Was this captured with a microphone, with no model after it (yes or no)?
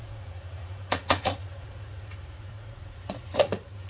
no